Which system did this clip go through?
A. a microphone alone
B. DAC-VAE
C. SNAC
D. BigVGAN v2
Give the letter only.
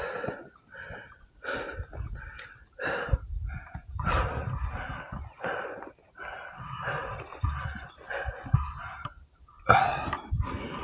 A